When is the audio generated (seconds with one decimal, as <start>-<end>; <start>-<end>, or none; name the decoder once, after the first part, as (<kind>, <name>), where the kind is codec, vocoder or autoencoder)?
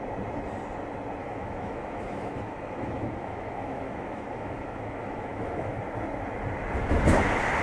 1.2-5.8 (autoencoder, DAC-VAE)